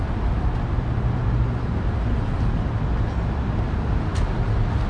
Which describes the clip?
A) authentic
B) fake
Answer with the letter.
A